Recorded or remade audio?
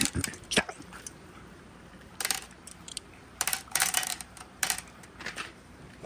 remade